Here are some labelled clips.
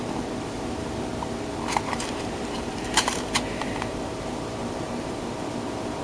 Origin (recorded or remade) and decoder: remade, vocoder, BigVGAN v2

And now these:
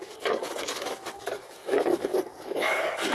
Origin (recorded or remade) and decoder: remade, codec, DAC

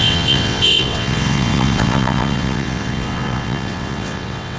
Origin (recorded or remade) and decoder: remade, vocoder, WaveNeXt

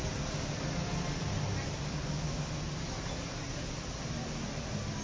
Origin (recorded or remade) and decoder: recorded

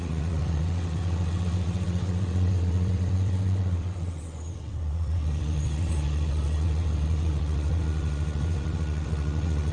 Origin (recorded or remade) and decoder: remade, vocoder, WaveNeXt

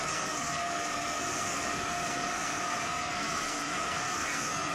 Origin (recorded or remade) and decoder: remade, codec, SNAC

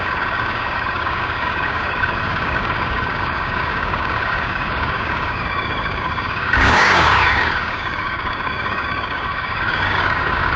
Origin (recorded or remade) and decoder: remade, codec, DAC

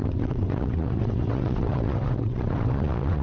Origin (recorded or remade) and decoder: remade, vocoder, WaveNeXt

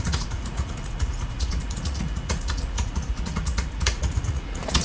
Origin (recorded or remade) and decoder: remade, vocoder, Vocos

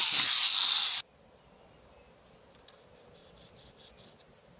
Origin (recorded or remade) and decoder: recorded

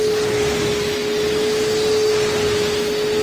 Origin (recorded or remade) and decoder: recorded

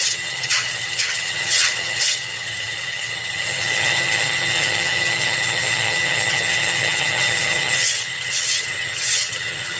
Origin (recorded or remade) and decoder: remade, vocoder, HiFi-GAN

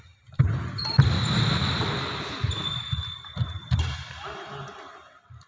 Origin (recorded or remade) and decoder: recorded